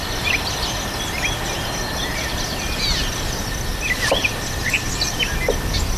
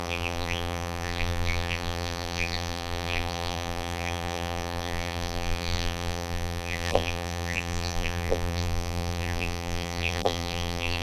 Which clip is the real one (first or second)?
first